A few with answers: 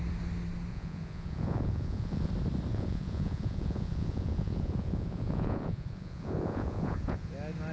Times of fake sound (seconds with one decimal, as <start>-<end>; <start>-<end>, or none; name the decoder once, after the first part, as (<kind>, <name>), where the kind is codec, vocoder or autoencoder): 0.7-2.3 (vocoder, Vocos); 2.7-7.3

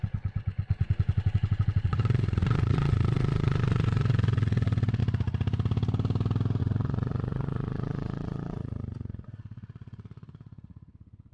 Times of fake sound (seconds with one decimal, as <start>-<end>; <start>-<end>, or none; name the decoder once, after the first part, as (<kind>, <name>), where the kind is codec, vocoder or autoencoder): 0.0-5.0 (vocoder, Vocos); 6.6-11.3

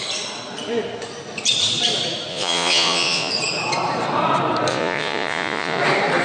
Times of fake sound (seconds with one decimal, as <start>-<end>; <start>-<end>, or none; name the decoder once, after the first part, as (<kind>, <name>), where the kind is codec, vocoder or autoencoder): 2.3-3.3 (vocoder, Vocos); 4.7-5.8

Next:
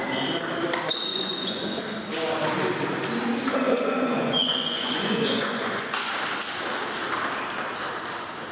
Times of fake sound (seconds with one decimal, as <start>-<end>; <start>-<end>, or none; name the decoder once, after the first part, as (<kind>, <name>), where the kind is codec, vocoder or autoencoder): 1.1-1.8 (vocoder, Vocos); 3.6-6.1

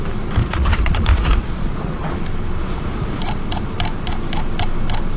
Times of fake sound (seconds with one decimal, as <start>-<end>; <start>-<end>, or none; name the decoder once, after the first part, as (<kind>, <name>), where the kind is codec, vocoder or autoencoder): 0.4-2.2 (vocoder, Vocos); 2.6-3.2

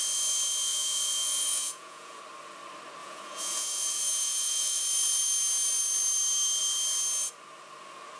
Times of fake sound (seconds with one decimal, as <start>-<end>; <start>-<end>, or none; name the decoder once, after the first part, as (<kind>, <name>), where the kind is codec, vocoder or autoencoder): 0.7-2.2 (vocoder, Vocos); 3.0-4.8

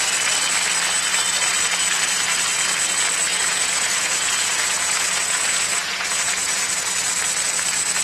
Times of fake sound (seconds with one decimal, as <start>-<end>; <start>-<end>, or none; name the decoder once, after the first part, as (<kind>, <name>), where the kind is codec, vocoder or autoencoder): 3.3-6.9 (vocoder, Vocos)

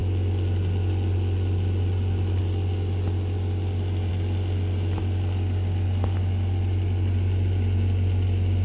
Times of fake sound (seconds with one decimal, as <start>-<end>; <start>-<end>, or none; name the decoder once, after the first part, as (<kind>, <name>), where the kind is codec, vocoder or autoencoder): none